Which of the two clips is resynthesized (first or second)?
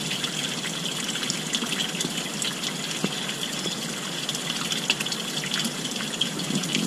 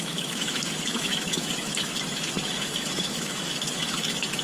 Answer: second